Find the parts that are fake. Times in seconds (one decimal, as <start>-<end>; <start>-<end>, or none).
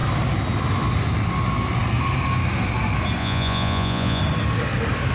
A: 3.2-4.2